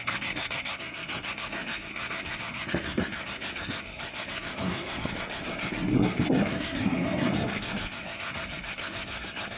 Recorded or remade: remade